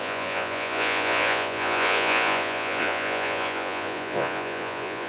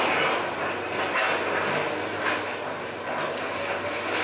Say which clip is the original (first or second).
second